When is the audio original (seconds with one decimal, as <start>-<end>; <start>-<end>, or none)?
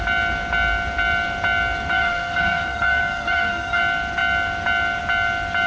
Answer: 0.0-1.9; 3.8-5.7